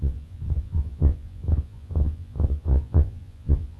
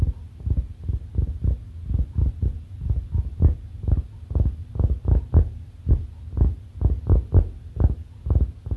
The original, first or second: second